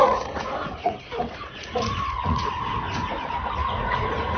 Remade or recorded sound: remade